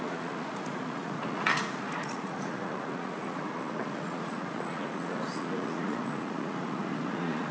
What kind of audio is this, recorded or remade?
remade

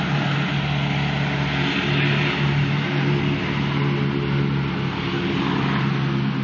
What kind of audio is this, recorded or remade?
recorded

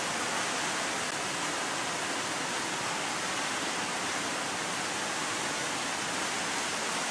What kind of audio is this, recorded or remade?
recorded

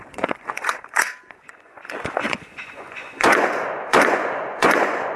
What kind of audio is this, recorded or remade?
remade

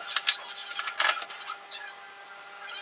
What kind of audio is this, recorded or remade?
recorded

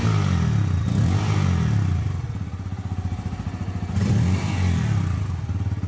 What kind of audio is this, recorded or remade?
recorded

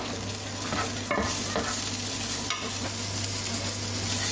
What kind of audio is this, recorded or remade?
recorded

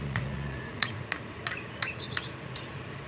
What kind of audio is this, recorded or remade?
remade